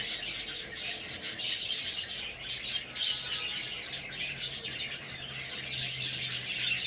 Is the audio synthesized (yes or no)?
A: no